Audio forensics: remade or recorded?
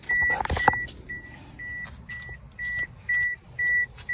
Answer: recorded